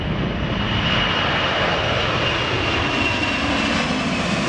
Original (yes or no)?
yes